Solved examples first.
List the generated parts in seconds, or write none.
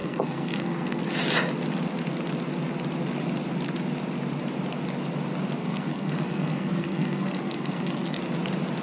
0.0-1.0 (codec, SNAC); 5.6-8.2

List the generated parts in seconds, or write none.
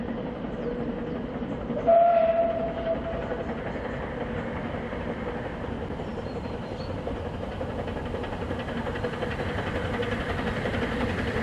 none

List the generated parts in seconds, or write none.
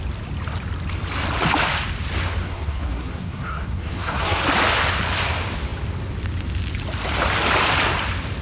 2.4-4.4 (codec, SNAC)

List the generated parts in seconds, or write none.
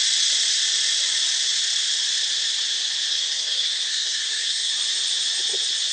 3.1-4.7 (codec, SNAC)